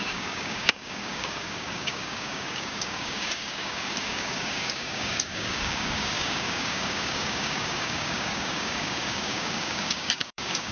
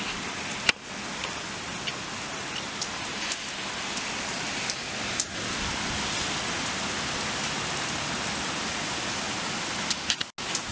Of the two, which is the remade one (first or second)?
first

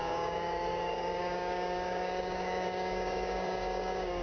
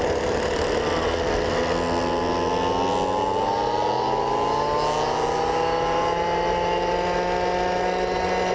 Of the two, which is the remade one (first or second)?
first